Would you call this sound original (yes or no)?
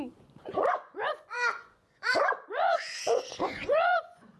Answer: no